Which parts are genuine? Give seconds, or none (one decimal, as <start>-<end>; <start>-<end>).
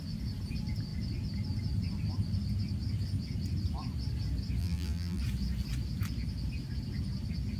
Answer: 0.0-4.6; 5.2-7.6